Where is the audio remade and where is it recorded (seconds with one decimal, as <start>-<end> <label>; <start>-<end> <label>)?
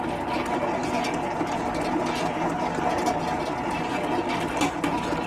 0.0-5.3 recorded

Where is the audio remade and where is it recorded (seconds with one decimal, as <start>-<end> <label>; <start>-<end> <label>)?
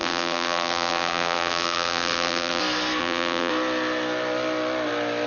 0.0-2.6 remade; 2.6-3.0 recorded; 3.0-3.5 remade; 3.5-5.3 recorded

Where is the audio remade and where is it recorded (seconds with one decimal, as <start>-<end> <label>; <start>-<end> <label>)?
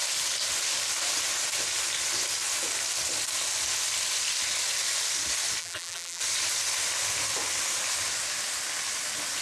0.0-5.6 recorded; 5.6-6.2 remade; 6.2-9.4 recorded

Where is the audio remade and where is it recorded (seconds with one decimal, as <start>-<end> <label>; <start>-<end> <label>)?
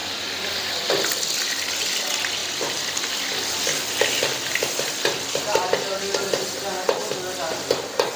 0.0-2.4 recorded; 2.4-6.0 remade; 6.0-7.0 recorded; 7.0-7.7 remade; 7.7-8.2 recorded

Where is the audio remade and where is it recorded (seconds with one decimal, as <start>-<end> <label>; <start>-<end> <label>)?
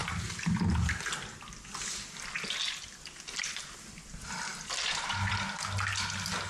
0.0-4.5 recorded; 4.5-5.3 remade; 5.3-6.5 recorded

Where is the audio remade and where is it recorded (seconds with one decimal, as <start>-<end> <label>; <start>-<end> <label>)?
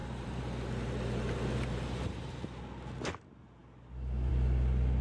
0.0-2.6 remade; 2.6-5.0 recorded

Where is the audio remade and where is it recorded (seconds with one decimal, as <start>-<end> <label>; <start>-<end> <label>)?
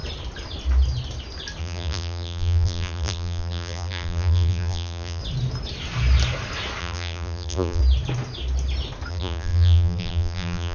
0.0-1.6 recorded; 1.6-5.2 remade; 5.2-6.8 recorded; 6.8-7.8 remade; 7.8-9.1 recorded; 9.1-10.7 remade